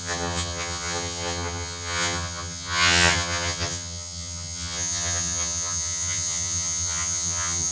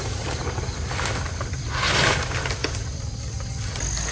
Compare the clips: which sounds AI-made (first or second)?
first